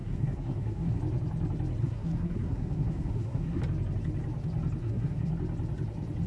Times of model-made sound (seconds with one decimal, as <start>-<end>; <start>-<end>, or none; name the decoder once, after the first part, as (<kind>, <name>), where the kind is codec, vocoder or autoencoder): 0.0-1.0 (codec, SNAC); 1.8-3.6; 4.8-5.3